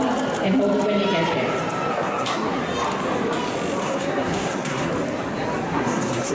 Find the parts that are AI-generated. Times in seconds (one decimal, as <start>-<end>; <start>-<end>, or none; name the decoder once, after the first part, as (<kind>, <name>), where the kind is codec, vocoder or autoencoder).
1.9-2.6 (codec, SNAC); 3.8-4.9; 5.7-6.3